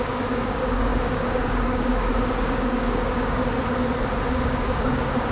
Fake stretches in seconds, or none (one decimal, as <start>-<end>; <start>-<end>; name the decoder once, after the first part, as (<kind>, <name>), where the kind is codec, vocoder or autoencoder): 0.0-3.4 (codec, DAC); 4.3-5.3